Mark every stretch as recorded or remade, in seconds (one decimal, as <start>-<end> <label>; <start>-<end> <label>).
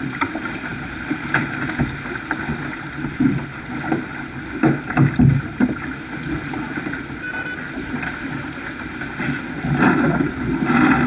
0.0-11.1 recorded